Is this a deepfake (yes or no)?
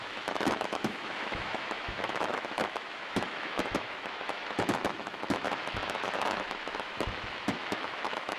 yes